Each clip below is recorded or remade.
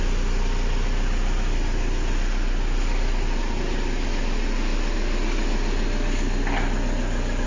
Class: recorded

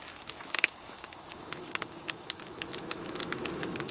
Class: remade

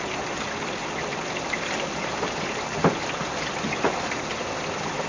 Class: recorded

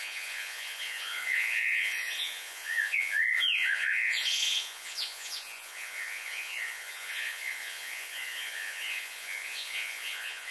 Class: remade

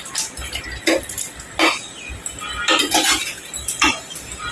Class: recorded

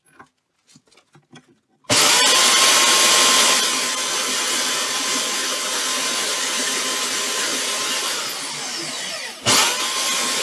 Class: recorded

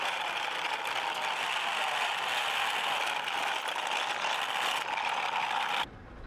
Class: recorded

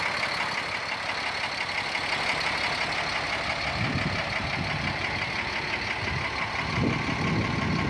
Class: recorded